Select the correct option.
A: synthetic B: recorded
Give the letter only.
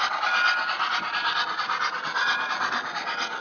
B